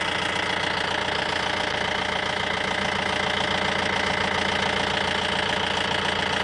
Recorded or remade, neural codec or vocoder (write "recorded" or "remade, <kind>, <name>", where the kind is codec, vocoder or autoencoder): recorded